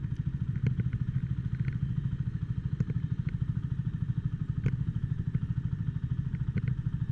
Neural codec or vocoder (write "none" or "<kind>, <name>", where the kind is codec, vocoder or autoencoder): none